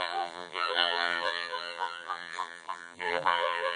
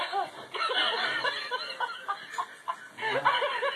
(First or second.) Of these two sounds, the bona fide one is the second